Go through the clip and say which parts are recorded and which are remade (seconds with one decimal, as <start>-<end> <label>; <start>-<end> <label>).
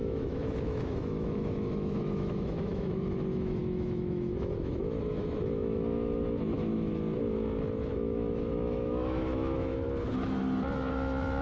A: 0.0-6.9 remade; 6.9-7.9 recorded; 7.9-9.7 remade; 9.7-10.9 recorded; 10.9-11.4 remade